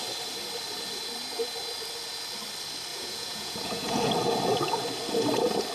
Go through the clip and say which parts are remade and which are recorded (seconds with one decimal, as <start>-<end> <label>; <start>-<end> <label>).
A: 0.0-2.9 recorded; 2.9-4.1 remade; 4.1-5.7 recorded